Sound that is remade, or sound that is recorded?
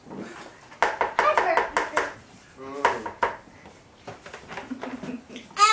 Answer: recorded